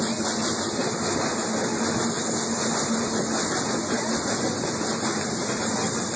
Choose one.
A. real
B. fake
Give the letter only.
A